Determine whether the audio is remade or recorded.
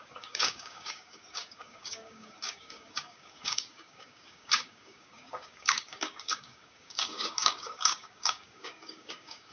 remade